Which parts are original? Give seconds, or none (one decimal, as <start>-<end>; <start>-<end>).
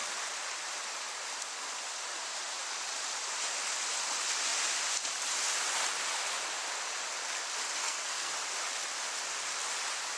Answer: 0.0-7.8; 8.3-10.2